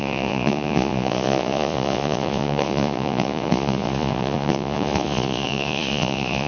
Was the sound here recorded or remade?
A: remade